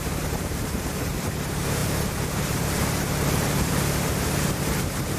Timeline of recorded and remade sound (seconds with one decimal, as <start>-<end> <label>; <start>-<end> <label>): 0.0-5.2 remade